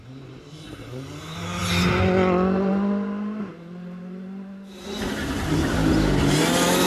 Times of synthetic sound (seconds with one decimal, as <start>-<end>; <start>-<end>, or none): none